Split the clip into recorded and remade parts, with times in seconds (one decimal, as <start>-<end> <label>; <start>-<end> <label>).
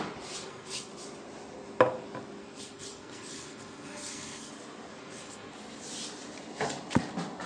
0.0-0.4 recorded; 0.4-0.9 remade; 0.9-2.4 recorded; 2.4-4.5 remade; 4.5-4.9 recorded; 4.9-5.5 remade; 5.5-7.5 recorded